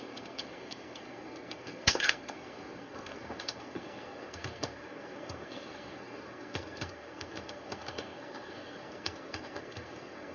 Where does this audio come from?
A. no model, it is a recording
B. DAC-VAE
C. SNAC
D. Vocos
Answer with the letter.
C